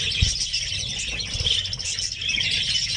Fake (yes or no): no